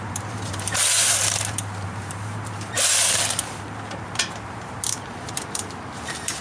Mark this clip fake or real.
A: fake